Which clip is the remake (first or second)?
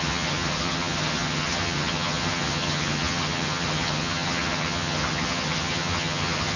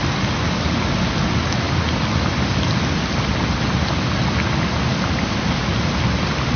first